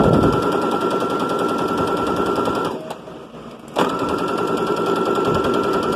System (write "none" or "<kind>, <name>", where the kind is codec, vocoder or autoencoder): vocoder, BigVGAN v2